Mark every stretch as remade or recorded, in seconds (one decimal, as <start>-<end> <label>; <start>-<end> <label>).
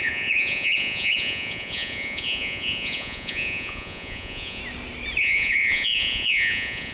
0.0-4.6 remade; 4.6-5.2 recorded; 5.2-6.9 remade